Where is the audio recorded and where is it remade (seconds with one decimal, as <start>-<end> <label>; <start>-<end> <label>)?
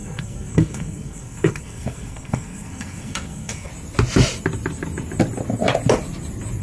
0.0-3.7 remade; 3.7-6.6 recorded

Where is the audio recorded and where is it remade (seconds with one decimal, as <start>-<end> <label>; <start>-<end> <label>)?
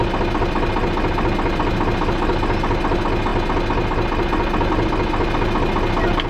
0.0-6.3 recorded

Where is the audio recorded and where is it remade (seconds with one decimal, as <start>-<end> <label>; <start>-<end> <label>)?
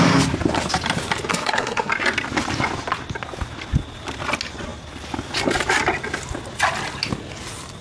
0.0-1.3 recorded; 1.3-1.9 remade; 1.9-7.8 recorded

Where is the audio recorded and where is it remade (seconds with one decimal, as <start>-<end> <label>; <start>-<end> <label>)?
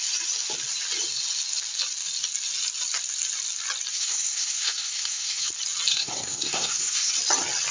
0.0-3.9 recorded; 3.9-5.5 remade; 5.5-5.9 recorded; 5.9-7.1 remade; 7.1-7.7 recorded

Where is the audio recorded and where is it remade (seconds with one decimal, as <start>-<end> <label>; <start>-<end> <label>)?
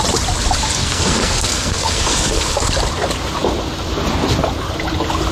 0.0-0.8 recorded; 0.8-2.7 remade; 2.7-5.3 recorded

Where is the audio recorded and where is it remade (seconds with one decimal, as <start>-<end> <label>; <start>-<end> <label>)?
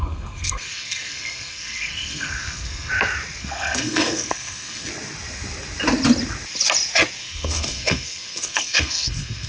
0.0-2.9 remade; 2.9-3.4 recorded; 3.4-4.9 remade; 4.9-7.2 recorded; 7.2-9.5 remade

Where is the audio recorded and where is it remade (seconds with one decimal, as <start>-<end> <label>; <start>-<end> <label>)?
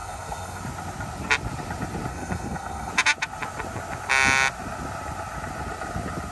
0.0-0.6 remade; 0.6-2.1 recorded; 2.1-2.9 remade; 2.9-6.3 recorded